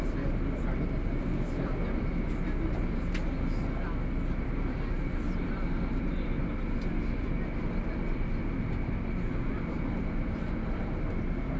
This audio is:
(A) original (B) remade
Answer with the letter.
A